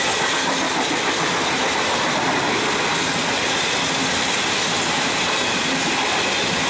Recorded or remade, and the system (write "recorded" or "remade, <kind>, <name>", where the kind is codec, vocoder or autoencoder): recorded